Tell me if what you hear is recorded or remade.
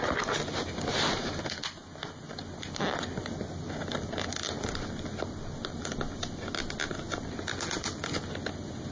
recorded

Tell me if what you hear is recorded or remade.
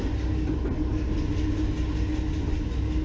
recorded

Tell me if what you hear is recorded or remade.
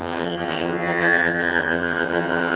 remade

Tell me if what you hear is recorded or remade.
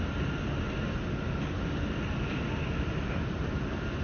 recorded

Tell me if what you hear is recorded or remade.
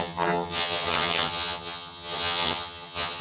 remade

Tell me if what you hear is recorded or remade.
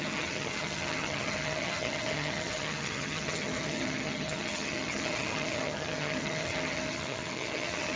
remade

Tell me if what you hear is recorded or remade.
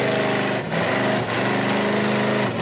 recorded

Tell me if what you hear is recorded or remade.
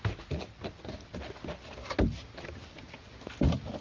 recorded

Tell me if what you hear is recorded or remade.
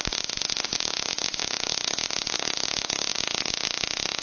recorded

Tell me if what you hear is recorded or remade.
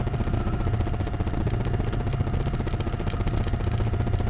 recorded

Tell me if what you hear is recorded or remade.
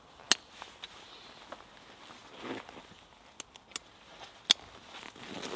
recorded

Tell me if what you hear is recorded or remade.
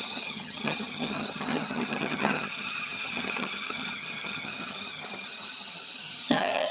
remade